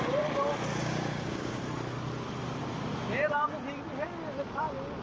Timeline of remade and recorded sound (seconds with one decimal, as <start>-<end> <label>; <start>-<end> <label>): 0.0-0.8 recorded; 0.8-1.6 remade; 1.6-5.0 recorded